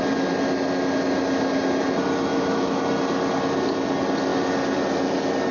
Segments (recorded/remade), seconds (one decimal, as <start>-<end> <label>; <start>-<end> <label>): 0.0-2.3 recorded; 2.3-2.8 remade; 2.8-5.5 recorded